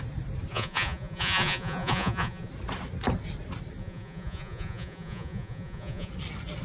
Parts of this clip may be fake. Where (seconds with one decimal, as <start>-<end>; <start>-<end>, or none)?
0.5-2.5; 3.8-6.1